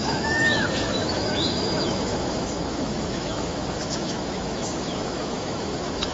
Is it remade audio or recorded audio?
remade